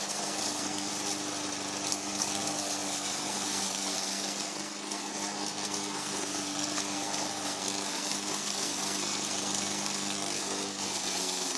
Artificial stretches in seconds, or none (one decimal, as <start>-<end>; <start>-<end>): 0.0-0.9; 1.9-11.6

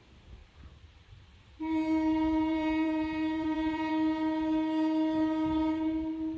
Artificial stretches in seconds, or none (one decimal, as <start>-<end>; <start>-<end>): 0.4-3.9

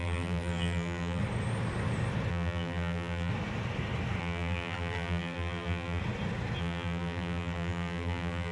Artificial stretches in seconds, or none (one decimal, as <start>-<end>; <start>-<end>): 0.0-1.2; 2.3-3.3; 4.2-6.0; 6.6-8.5